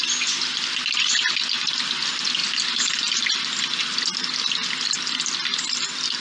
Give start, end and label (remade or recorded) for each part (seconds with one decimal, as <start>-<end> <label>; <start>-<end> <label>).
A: 0.0-6.2 recorded